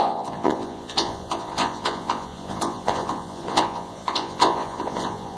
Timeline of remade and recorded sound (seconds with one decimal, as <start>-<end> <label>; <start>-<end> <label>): 0.0-5.4 remade